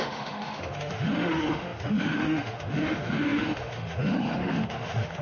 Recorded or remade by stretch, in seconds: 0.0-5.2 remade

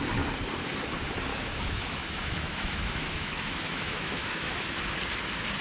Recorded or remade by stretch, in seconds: 0.0-1.3 recorded; 1.3-4.7 remade; 4.7-5.6 recorded

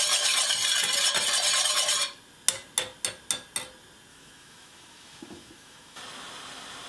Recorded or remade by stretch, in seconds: 0.0-4.1 recorded; 4.1-6.0 remade; 6.0-6.9 recorded

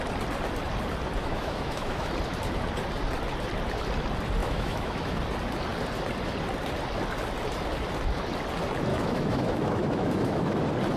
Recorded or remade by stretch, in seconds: 0.0-1.2 recorded; 1.2-2.1 remade; 2.1-4.4 recorded; 4.4-5.2 remade; 5.2-8.9 recorded; 8.9-10.6 remade; 10.6-11.0 recorded

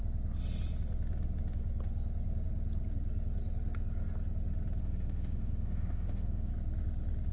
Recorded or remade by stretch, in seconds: 0.0-4.8 recorded; 4.8-6.5 remade; 6.5-7.3 recorded

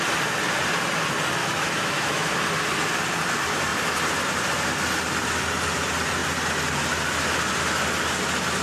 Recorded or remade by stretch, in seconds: 0.0-1.4 recorded; 1.4-2.3 remade; 2.3-8.6 recorded

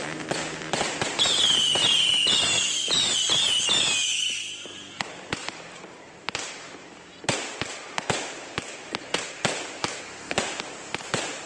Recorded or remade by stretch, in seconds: 0.0-9.8 recorded; 9.8-10.4 remade; 10.4-11.5 recorded